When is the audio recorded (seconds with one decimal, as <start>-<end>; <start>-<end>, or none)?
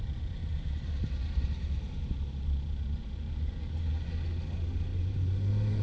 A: 0.0-0.4; 3.9-4.9